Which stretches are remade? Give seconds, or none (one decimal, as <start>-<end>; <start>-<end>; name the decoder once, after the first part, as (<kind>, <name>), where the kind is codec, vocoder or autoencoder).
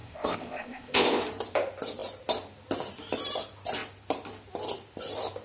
0.0-1.2 (codec, ZipCodec)